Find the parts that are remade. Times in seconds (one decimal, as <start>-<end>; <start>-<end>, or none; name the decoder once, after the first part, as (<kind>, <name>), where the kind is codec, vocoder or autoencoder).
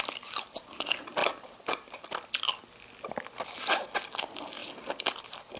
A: 1.2-2.1 (vocoder, BigVGAN v2); 4.6-5.1